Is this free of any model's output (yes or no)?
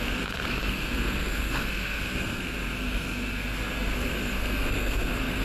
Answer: no